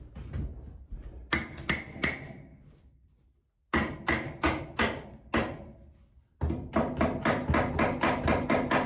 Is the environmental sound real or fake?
real